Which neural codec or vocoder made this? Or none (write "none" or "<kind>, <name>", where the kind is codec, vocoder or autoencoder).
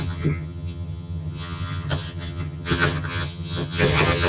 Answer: vocoder, HiFi-GAN